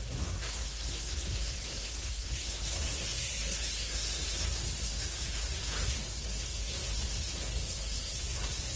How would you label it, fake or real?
fake